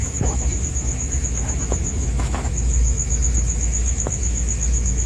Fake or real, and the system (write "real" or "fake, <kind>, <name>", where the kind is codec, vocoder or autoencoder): fake, autoencoder, DAC-VAE